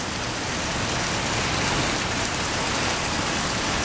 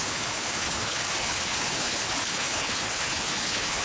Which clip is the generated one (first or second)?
second